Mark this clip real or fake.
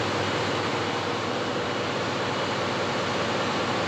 fake